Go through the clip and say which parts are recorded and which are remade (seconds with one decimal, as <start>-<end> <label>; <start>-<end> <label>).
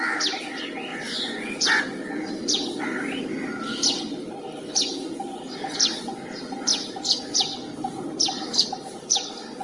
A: 0.0-0.9 recorded; 0.9-1.8 remade; 1.8-9.6 recorded